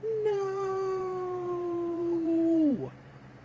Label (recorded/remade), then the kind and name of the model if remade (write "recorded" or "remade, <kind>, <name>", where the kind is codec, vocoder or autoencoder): remade, vocoder, BigVGAN v2